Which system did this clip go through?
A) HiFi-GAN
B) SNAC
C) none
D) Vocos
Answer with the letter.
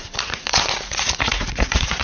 D